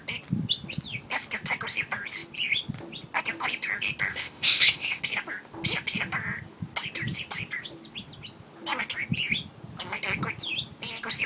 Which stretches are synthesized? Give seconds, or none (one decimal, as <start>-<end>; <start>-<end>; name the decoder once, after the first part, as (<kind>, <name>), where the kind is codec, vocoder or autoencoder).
4.1-5.0 (codec, ZipCodec)